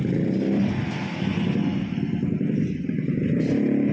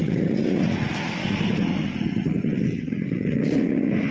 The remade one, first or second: second